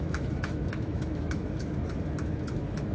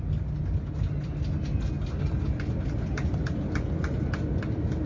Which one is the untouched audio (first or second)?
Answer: second